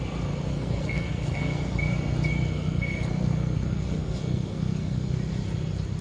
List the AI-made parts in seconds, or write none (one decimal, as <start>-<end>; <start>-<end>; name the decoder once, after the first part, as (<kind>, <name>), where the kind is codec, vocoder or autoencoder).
0.5-1.8 (codec, SNAC); 2.5-5.2